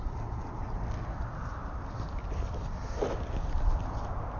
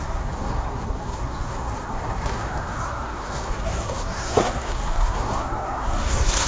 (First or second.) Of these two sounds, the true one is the first